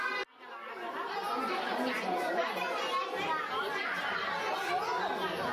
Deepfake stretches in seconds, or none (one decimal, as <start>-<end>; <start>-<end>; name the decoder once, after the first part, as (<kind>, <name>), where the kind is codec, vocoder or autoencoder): none